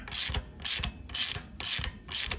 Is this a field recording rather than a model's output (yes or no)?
yes